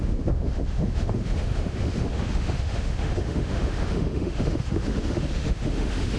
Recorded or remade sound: remade